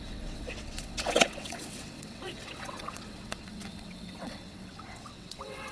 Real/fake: fake